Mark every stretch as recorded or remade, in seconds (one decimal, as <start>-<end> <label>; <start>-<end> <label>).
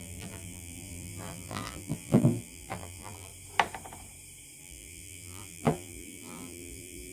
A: 0.0-3.3 remade; 3.3-4.6 recorded; 4.6-7.1 remade